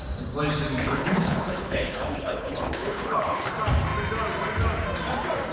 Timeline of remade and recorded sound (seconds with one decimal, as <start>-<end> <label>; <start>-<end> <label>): 0.0-0.8 recorded; 0.8-3.5 remade; 3.5-5.5 recorded